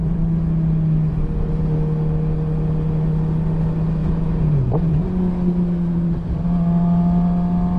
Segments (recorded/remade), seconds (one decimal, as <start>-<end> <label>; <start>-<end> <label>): 0.0-4.0 recorded; 4.0-5.0 remade; 5.0-7.8 recorded